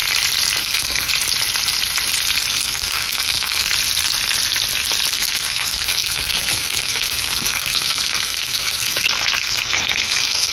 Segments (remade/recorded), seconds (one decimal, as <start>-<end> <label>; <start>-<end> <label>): 0.0-0.6 recorded; 0.6-1.1 remade; 1.1-2.5 recorded; 2.5-3.7 remade; 3.7-5.1 recorded; 5.1-10.5 remade